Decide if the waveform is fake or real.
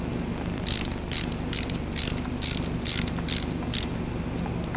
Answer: real